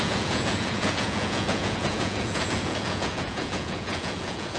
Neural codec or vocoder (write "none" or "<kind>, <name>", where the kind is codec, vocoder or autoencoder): vocoder, Vocos